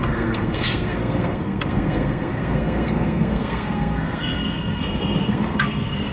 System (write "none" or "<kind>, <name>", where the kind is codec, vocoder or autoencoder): codec, SNAC